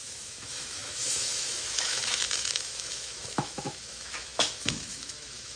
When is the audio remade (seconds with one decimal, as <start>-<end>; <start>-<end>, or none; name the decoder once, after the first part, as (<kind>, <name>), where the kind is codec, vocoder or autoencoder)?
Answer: 0.0-5.6 (autoencoder, DAC-VAE)